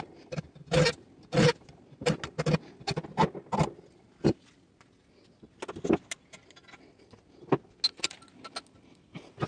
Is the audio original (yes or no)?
yes